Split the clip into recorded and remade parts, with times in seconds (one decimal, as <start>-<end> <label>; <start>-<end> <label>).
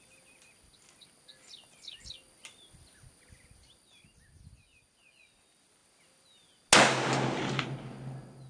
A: 0.0-8.5 recorded